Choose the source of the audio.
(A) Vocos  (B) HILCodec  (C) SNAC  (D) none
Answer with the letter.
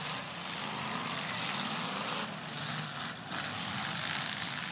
D